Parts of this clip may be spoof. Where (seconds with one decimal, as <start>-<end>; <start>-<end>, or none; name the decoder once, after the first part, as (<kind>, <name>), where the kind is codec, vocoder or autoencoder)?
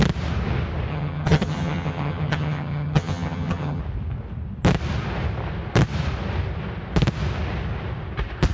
0.9-3.8 (vocoder, HiFi-GAN)